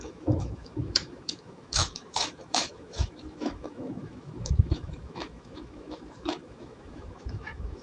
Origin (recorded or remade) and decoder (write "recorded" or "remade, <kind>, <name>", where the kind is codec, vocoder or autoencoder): remade, autoencoder, DAC-VAE